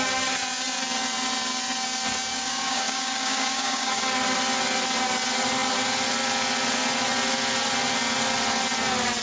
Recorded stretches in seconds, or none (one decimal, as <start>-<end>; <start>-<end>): 0.0-2.3; 4.0-9.2